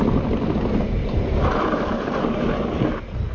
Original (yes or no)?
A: yes